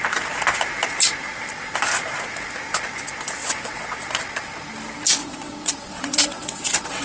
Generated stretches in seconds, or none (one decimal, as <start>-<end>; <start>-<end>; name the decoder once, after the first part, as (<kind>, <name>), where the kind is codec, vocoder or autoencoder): 3.4-4.0 (vocoder, WaveNeXt); 5.2-7.0